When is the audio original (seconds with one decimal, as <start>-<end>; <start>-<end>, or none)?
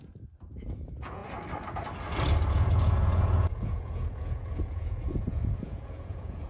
1.2-2.5